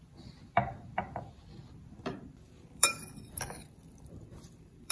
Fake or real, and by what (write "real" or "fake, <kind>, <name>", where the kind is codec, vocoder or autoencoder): fake, vocoder, BigVGAN v2